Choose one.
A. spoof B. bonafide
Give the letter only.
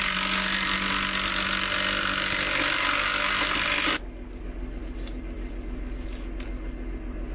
B